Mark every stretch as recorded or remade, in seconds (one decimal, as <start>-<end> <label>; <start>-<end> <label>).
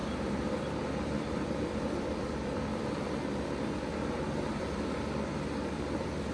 0.0-6.3 remade